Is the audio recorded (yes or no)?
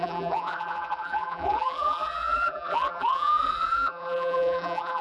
no